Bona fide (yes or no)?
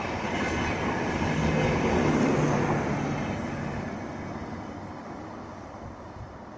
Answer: yes